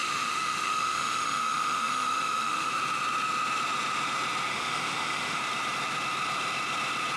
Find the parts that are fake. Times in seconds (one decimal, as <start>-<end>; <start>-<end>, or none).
0.0-2.7; 4.5-5.4